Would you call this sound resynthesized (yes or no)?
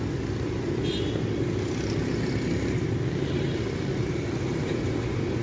no